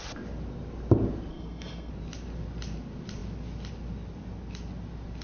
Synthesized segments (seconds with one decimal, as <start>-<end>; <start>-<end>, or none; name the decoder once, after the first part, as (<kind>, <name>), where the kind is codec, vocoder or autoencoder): 1.3-1.9 (codec, SNAC)